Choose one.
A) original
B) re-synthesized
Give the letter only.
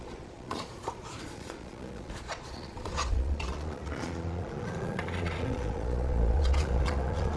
B